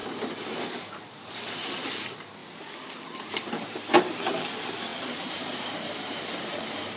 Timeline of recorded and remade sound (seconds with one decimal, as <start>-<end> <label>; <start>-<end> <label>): 0.0-0.8 recorded; 0.8-2.4 remade; 2.4-3.5 recorded; 3.5-7.0 remade